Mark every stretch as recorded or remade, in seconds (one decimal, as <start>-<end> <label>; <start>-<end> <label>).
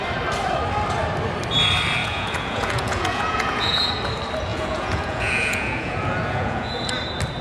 0.0-2.0 recorded; 2.0-3.9 remade; 3.9-4.5 recorded; 4.5-6.9 remade; 6.9-7.4 recorded